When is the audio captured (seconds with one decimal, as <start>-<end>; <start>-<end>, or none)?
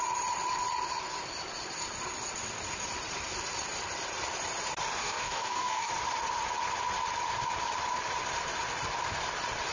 0.0-5.0; 5.9-9.7